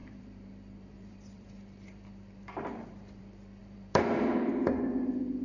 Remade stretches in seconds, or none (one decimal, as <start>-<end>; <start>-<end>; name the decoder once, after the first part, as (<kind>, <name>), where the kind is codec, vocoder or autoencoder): 0.0-3.2 (vocoder, BigVGAN v2); 3.6-4.5